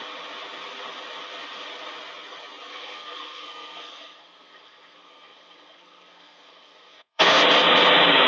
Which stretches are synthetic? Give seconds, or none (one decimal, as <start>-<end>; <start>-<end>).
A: 2.7-7.4